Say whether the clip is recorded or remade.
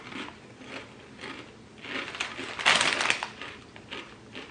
recorded